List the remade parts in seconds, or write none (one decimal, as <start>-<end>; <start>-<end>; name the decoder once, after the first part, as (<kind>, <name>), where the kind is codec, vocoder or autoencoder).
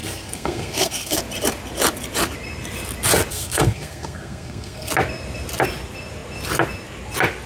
0.0-1.2 (codec, SNAC); 3.3-4.9